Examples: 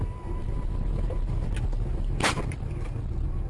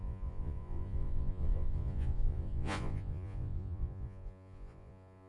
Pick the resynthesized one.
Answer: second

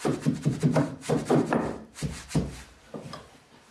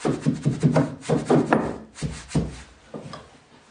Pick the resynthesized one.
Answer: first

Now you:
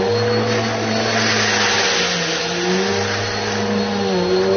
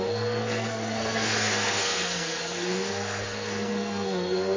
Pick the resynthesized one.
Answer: second